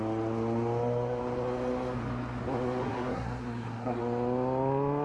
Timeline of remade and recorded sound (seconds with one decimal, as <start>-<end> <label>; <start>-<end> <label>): 0.0-2.8 recorded; 2.8-4.0 remade; 4.0-5.0 recorded

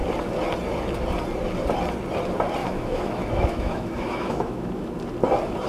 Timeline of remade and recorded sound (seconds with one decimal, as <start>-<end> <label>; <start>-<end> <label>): 0.0-2.6 recorded; 2.6-4.9 remade; 4.9-5.7 recorded

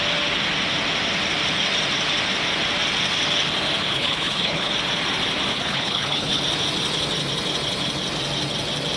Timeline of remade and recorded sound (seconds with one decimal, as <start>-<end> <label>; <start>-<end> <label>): 0.0-3.9 recorded; 3.9-4.7 remade; 4.7-5.5 recorded; 5.5-6.4 remade; 6.4-9.0 recorded